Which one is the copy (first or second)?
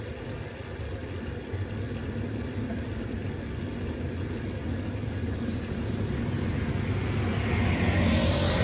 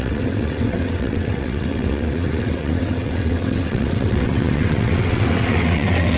second